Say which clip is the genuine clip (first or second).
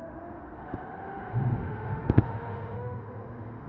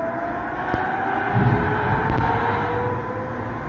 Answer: second